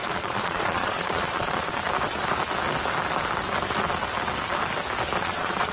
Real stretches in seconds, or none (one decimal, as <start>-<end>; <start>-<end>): 1.8-5.2